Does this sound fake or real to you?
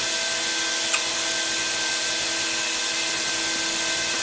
real